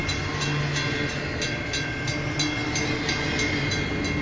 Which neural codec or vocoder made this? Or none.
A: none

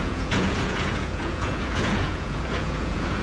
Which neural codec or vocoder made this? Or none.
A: vocoder, Vocos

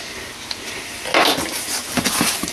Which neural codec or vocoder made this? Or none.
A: none